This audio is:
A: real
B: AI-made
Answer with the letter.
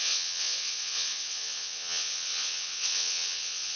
B